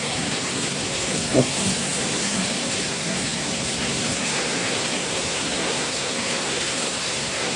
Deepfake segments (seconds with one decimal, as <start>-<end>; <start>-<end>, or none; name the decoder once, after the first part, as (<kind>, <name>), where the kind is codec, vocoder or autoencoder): 0.0-7.6 (codec, SNAC)